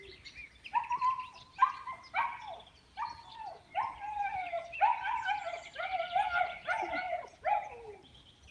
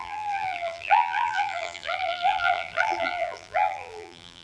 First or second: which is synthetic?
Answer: second